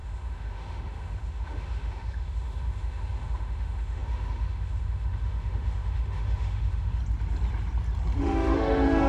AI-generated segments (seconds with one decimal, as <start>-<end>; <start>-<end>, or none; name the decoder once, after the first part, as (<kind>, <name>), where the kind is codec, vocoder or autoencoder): 0.0-7.0 (autoencoder, DAC-VAE); 8.2-9.1